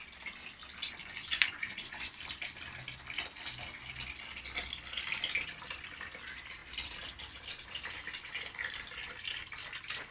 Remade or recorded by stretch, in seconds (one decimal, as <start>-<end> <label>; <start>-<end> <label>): 0.0-1.0 recorded; 1.0-2.2 remade; 2.2-10.1 recorded

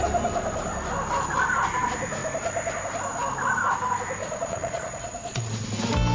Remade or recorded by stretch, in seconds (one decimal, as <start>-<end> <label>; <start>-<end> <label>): 0.0-4.2 recorded; 4.2-5.5 remade; 5.5-6.1 recorded

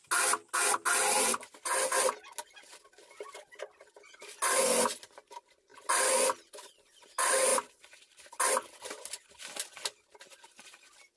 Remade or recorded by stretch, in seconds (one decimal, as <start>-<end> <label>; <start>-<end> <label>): 0.0-11.2 recorded

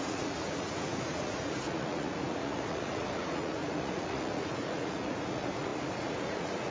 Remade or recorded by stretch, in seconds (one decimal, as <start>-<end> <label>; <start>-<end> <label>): 0.0-6.7 remade

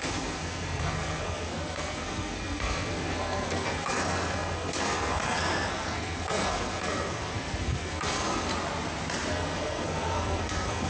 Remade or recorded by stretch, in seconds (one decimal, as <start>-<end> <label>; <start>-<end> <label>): 0.0-8.5 remade; 8.5-9.3 recorded; 9.3-10.9 remade

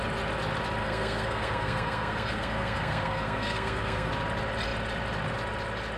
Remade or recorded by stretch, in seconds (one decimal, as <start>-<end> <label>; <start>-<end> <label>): 0.0-0.8 recorded; 0.8-4.1 remade; 4.1-6.0 recorded